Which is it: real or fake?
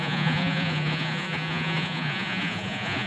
fake